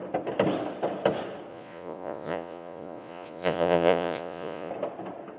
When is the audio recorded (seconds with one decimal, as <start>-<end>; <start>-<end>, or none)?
0.0-1.5; 4.7-5.4